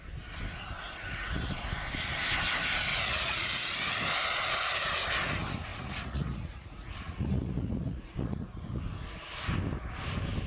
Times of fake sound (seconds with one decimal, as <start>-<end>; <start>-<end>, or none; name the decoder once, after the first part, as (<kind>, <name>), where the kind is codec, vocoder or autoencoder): 0.8-1.5 (vocoder, Vocos); 2.9-3.7; 5.7-8.8